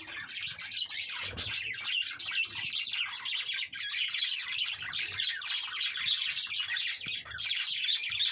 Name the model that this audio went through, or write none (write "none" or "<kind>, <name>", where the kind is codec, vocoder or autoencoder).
none